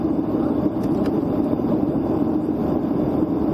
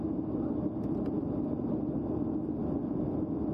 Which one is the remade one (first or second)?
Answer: first